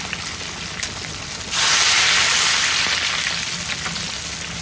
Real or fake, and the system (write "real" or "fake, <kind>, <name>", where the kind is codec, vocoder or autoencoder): real